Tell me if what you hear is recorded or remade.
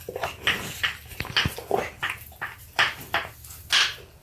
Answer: recorded